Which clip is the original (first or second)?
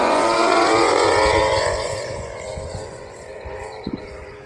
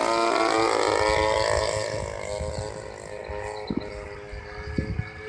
second